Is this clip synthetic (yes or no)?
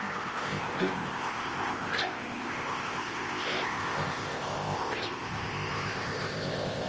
yes